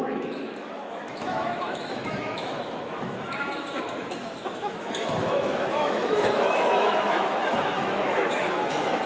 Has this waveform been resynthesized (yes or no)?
yes